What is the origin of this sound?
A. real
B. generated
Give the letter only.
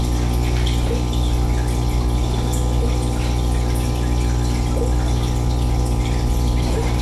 A